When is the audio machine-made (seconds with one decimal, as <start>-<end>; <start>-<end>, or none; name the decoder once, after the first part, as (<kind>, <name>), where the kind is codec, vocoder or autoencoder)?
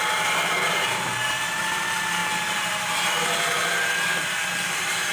0.0-5.1 (vocoder, BigVGAN v2)